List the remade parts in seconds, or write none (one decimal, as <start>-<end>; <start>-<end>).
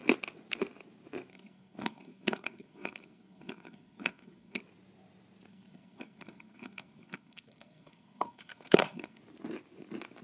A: 1.3-4.6; 5.5-9.2